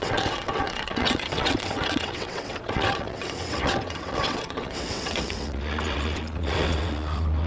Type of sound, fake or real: fake